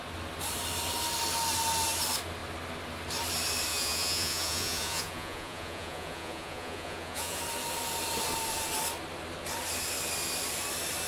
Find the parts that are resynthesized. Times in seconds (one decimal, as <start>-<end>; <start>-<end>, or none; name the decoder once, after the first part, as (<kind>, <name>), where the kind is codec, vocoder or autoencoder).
3.7-7.4 (vocoder, Vocos)